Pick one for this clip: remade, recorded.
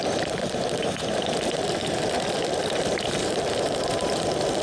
remade